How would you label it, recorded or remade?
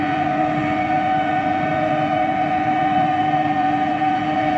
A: remade